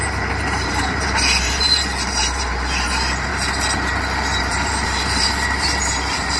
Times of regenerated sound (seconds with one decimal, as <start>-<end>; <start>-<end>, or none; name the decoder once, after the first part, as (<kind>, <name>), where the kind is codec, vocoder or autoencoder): 0.0-3.3 (vocoder, BigVGAN v2); 4.4-6.4